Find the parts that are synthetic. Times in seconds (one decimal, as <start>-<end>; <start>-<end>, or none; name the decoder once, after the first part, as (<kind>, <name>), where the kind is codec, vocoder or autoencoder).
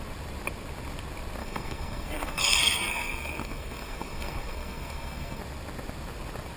1.4-5.4 (codec, SNAC)